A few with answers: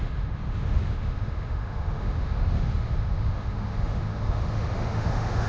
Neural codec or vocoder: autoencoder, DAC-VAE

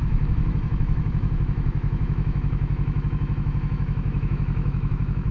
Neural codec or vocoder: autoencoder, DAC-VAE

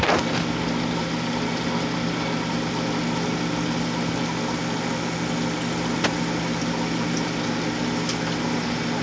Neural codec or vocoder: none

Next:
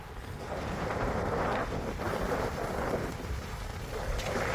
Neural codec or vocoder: none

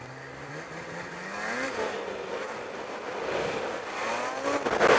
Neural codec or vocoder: none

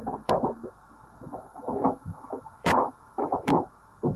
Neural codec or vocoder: autoencoder, DAC-VAE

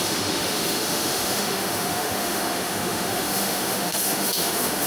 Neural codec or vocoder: autoencoder, DAC-VAE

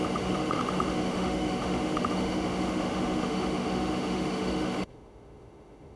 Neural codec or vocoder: autoencoder, DAC-VAE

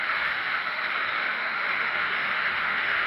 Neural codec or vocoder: autoencoder, DAC-VAE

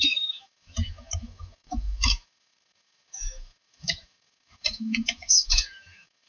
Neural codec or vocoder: autoencoder, DAC-VAE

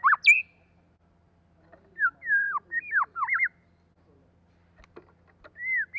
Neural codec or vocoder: none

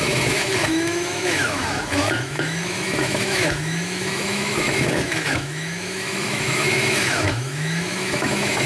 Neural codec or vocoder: autoencoder, DAC-VAE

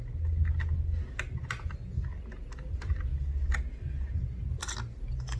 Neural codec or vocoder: none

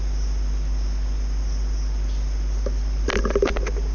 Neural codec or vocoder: none